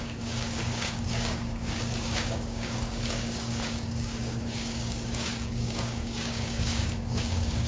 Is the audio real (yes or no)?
no